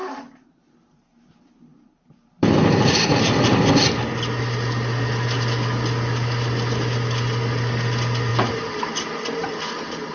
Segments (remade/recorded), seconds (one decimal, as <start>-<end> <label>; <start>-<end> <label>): 0.0-3.7 remade; 3.7-8.3 recorded; 8.3-8.8 remade; 8.8-10.1 recorded